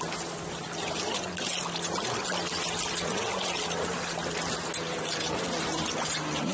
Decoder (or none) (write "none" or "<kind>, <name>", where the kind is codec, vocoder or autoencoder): none